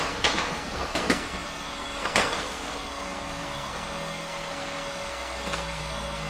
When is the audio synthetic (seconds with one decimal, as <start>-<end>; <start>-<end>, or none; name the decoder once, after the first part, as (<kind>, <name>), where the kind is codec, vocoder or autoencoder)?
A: 0.0-6.3 (codec, SNAC)